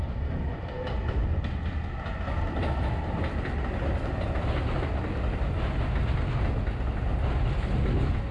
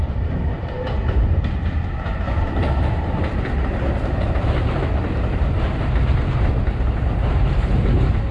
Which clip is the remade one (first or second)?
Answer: second